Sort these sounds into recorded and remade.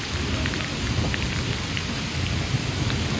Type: recorded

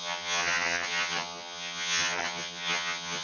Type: remade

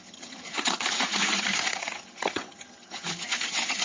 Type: remade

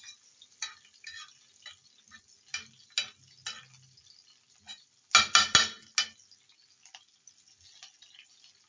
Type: recorded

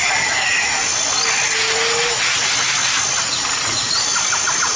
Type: recorded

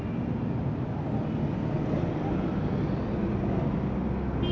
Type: recorded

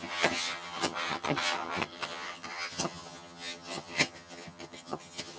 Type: remade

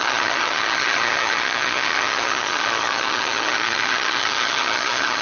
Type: remade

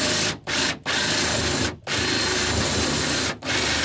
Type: recorded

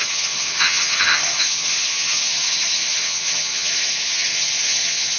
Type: remade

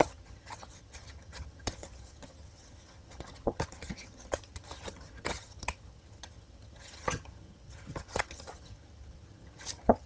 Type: remade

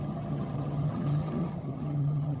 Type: remade